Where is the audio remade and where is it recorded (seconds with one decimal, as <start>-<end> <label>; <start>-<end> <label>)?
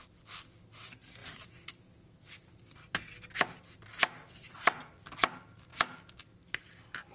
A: 0.0-4.2 recorded; 4.2-5.0 remade; 5.0-7.1 recorded